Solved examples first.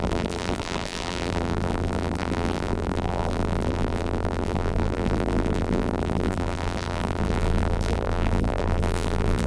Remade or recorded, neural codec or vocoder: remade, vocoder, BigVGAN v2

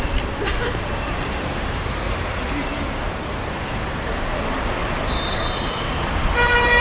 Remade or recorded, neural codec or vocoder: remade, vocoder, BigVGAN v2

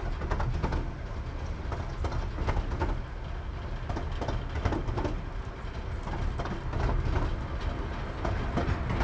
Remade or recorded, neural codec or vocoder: recorded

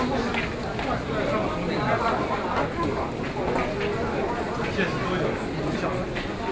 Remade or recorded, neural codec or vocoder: recorded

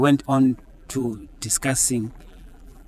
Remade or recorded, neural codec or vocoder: remade, vocoder, BigVGAN v2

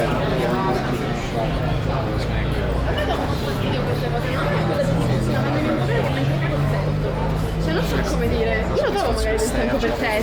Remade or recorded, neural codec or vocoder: recorded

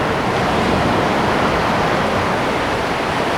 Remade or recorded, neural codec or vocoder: recorded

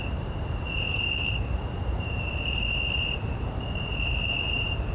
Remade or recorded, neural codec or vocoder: remade, vocoder, BigVGAN v2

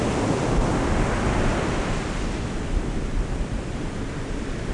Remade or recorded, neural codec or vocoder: recorded